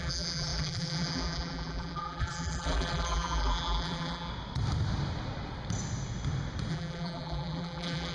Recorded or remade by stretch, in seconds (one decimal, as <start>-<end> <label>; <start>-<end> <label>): 0.0-4.3 remade; 4.3-6.7 recorded; 6.7-8.1 remade